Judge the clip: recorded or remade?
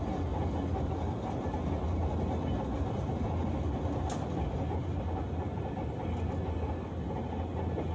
recorded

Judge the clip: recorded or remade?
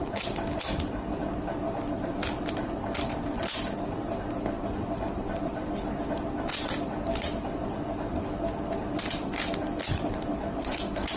recorded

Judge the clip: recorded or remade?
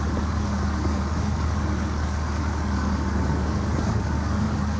remade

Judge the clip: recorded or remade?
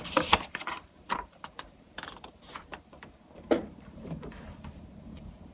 remade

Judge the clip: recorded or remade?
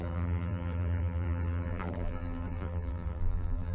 remade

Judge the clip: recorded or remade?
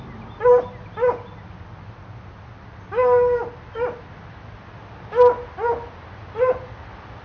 recorded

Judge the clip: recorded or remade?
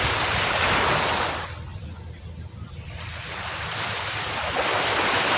recorded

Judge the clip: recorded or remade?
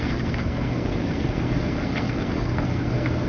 remade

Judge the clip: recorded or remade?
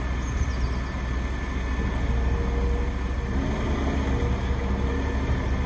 recorded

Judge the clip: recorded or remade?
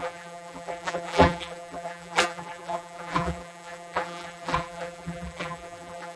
remade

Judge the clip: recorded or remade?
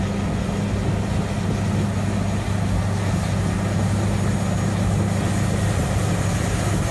recorded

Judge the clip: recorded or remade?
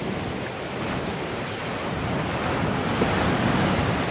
recorded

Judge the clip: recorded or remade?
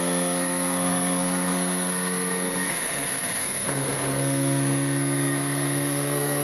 remade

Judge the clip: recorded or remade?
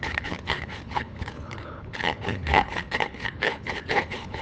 remade